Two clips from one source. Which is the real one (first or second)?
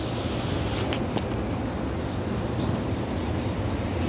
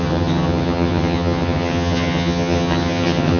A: first